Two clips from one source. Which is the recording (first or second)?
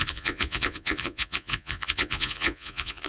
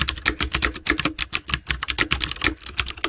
second